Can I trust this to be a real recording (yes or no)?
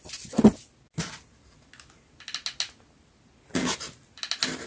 yes